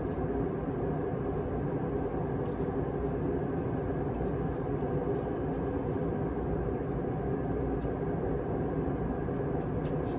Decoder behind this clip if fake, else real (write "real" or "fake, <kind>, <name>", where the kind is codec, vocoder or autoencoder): real